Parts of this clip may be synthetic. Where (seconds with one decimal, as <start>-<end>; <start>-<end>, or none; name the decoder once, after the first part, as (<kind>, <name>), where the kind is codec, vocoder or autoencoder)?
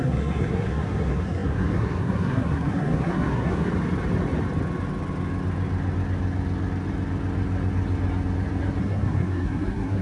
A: 0.0-3.7 (codec, SNAC); 8.8-10.0